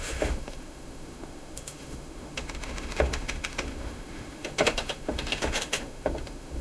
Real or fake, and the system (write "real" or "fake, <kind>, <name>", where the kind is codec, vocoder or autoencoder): fake, autoencoder, DAC-VAE